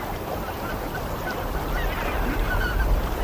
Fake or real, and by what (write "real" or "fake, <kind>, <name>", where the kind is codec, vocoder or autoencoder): real